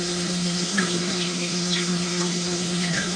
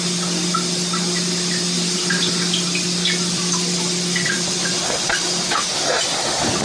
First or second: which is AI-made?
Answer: first